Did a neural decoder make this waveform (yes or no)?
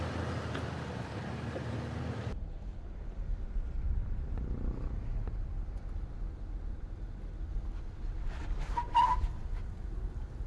no